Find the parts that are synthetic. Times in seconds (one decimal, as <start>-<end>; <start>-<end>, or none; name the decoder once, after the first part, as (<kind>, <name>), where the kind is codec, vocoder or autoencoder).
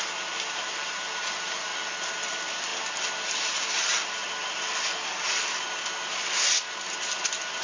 0.0-1.7 (vocoder, BigVGAN v2); 2.3-2.7; 3.3-4.2